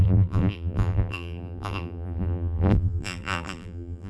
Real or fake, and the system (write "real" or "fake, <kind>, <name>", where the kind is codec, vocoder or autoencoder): fake, vocoder, BigVGAN v2